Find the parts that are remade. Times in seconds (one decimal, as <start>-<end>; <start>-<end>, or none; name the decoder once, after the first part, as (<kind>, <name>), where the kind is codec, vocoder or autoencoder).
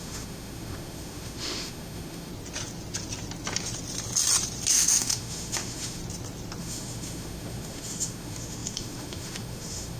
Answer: 0.0-2.3 (autoencoder, DAC-VAE); 4.7-6.0; 6.6-10.0